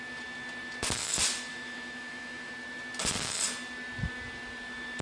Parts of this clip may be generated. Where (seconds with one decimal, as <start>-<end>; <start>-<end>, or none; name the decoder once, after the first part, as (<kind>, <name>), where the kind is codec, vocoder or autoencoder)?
1.5-2.5 (autoencoder, DAC-VAE)